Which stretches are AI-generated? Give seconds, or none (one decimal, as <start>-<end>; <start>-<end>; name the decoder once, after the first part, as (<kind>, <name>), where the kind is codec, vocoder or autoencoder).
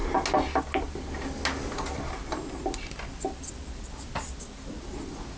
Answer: none